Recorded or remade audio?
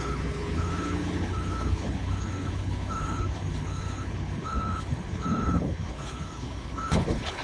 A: remade